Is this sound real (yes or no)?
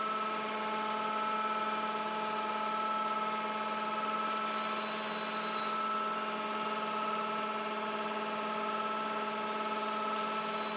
yes